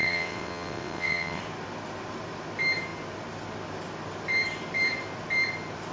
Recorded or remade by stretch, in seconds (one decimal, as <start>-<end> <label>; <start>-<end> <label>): 0.0-1.4 remade; 1.4-5.9 recorded